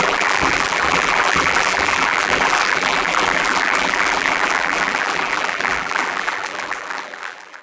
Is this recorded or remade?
remade